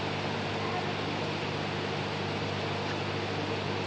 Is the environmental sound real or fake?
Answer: real